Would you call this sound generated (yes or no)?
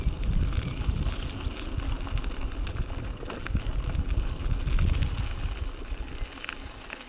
no